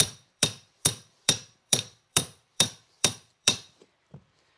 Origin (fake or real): fake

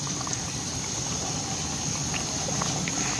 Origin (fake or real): real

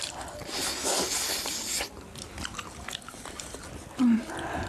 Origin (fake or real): real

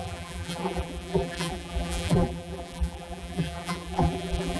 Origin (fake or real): fake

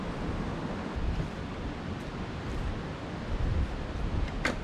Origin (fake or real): fake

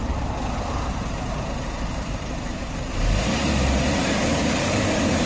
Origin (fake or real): fake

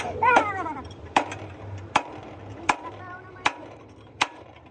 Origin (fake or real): fake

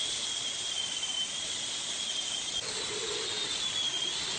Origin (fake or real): real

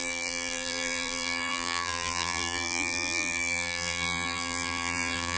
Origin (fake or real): fake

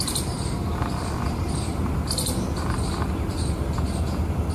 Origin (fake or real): fake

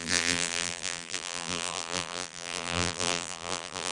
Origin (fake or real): fake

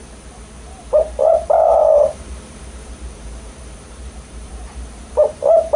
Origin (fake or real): fake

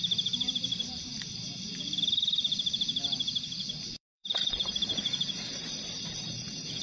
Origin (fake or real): fake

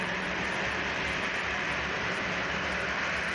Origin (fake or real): real